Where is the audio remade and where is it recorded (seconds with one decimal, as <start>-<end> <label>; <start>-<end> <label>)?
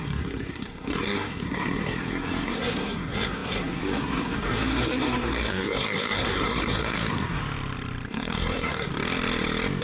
0.0-7.4 remade; 7.4-8.1 recorded; 8.1-8.9 remade; 8.9-9.8 recorded